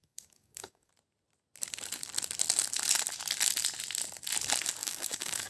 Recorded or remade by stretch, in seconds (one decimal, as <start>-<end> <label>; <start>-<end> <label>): 0.0-0.9 remade; 0.9-4.8 recorded; 4.8-5.5 remade